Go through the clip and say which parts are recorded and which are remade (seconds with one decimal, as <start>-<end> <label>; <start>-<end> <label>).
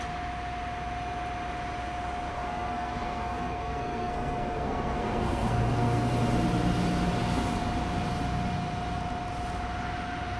0.0-2.3 recorded; 2.3-6.1 remade; 6.1-10.4 recorded